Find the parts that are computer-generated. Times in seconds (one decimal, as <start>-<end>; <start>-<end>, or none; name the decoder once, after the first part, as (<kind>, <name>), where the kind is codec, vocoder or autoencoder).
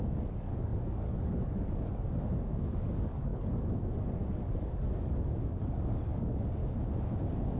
0.0-6.6 (codec, DAC)